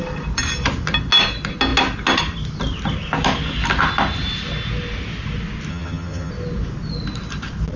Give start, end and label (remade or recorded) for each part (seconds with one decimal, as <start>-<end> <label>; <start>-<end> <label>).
0.0-5.7 recorded; 5.7-6.3 remade; 6.3-7.8 recorded